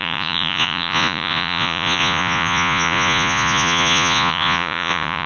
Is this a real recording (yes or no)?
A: no